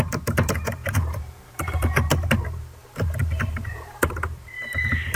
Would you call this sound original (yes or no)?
no